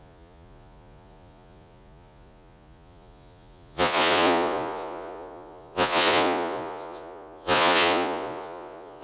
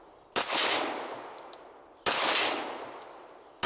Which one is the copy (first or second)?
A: first